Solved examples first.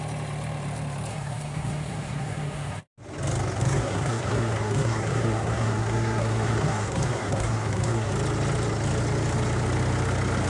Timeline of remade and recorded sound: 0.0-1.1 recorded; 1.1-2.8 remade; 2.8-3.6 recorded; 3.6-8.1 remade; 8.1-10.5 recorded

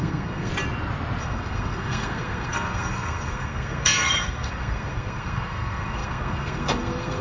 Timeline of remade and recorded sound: 0.0-0.5 remade; 0.5-1.2 recorded; 1.2-7.2 remade

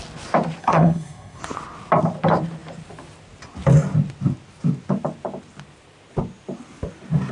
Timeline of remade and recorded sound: 0.0-0.6 recorded; 0.6-1.4 remade; 1.4-7.3 recorded

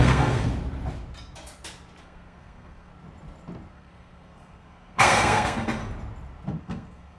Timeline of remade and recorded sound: 0.0-0.5 remade; 0.5-2.0 recorded; 2.0-2.9 remade; 2.9-3.7 recorded; 3.7-5.8 remade; 5.8-6.6 recorded; 6.6-7.2 remade